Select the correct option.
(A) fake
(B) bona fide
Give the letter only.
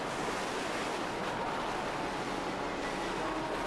B